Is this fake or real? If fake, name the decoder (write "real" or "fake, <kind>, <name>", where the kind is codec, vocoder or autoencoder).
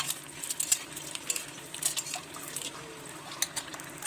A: real